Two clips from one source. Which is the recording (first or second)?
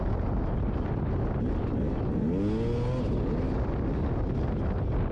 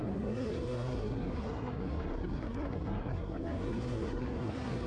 first